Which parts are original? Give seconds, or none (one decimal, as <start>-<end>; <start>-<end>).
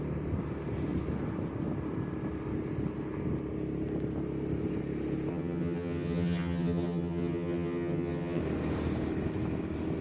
0.0-5.3; 8.4-10.0